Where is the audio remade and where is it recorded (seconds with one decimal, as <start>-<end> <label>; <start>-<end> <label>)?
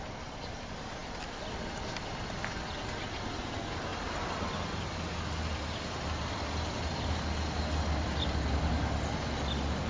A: 0.0-9.9 recorded